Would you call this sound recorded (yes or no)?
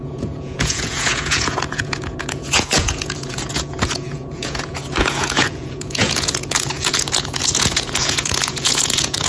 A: no